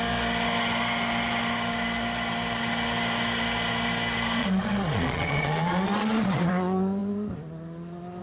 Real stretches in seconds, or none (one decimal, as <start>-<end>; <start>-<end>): 0.0-4.4; 6.5-8.2